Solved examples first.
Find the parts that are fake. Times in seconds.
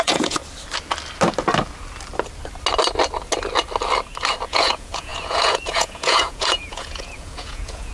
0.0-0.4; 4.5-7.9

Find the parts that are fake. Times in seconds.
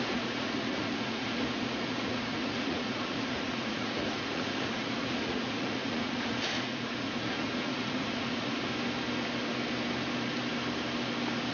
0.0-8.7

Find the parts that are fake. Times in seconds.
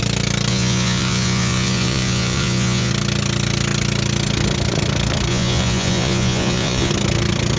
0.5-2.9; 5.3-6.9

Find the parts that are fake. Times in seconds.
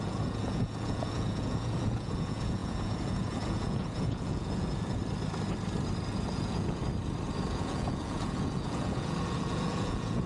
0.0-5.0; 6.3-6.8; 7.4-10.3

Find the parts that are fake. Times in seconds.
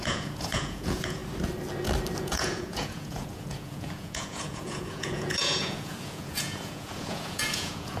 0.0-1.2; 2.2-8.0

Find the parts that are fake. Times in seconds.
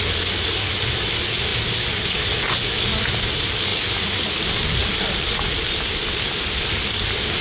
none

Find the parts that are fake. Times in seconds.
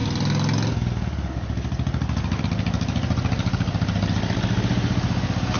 none